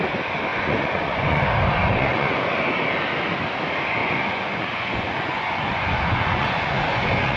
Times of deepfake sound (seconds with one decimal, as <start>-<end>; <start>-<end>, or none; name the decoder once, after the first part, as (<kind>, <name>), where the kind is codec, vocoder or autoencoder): 0.5-1.4 (vocoder, Vocos); 1.8-2.6; 4.0-7.4